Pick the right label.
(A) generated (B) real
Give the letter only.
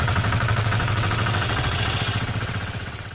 A